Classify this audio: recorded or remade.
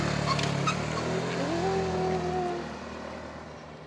recorded